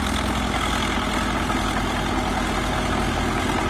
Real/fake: real